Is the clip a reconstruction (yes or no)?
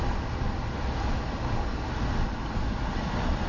no